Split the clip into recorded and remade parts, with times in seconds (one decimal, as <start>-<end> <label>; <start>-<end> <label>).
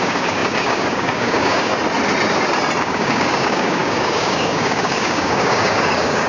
0.0-1.7 remade; 1.7-2.8 recorded; 2.8-6.3 remade